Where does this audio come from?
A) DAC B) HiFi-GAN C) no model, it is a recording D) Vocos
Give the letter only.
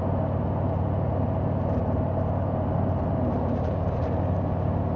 C